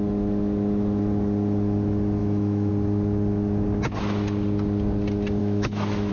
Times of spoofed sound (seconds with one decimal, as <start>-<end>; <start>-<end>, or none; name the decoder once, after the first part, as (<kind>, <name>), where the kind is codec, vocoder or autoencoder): 2.2-2.7 (autoencoder, DAC-VAE); 5.4-6.1